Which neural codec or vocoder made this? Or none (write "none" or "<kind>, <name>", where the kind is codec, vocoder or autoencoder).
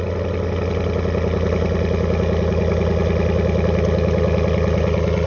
none